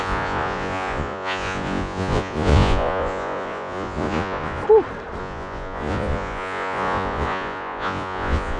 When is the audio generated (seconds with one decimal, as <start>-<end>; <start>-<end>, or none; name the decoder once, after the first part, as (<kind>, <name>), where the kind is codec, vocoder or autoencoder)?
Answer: 0.0-4.6 (vocoder, Vocos); 5.2-8.6